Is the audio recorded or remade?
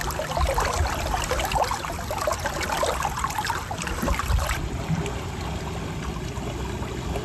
recorded